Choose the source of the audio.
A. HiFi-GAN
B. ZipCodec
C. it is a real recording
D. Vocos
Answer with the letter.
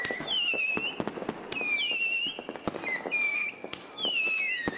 C